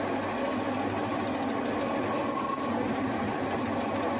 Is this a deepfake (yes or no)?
no